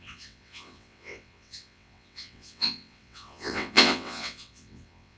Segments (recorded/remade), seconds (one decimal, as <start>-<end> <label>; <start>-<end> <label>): 0.0-5.2 remade